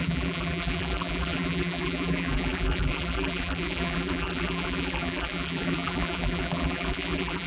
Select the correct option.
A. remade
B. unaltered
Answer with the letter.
A